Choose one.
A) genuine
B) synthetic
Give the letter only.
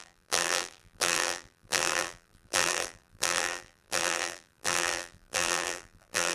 B